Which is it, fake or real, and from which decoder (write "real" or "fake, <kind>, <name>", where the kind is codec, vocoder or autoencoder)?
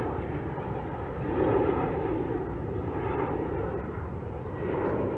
fake, vocoder, BigVGAN v2